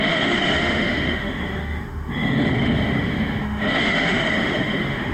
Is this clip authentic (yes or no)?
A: no